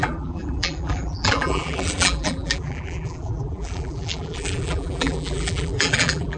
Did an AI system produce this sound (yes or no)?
yes